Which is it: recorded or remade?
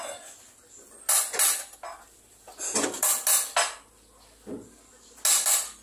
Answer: recorded